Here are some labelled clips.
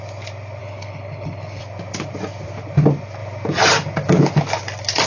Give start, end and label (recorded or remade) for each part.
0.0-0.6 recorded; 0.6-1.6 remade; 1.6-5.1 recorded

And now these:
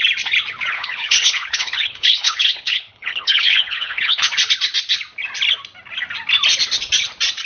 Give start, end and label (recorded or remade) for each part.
0.0-0.7 recorded; 0.7-4.3 remade; 4.3-7.5 recorded

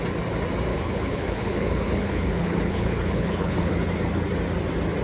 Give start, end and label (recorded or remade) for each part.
0.0-0.7 recorded; 0.7-3.7 remade; 3.7-5.0 recorded

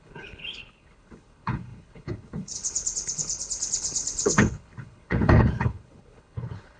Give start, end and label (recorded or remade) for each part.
0.0-6.8 remade

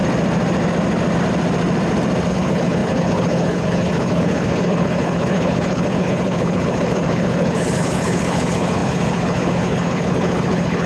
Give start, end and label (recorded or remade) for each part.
0.0-2.3 recorded; 2.3-10.9 remade

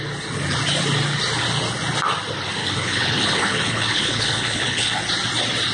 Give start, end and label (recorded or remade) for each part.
0.0-2.6 recorded; 2.6-5.0 remade; 5.0-5.7 recorded

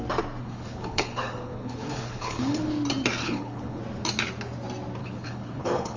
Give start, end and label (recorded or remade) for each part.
0.0-0.4 recorded; 0.4-2.7 remade; 2.7-3.2 recorded; 3.2-3.8 remade; 3.8-5.0 recorded; 5.0-6.0 remade